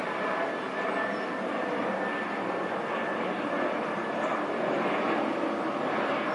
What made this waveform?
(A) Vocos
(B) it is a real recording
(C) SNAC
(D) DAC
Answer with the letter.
B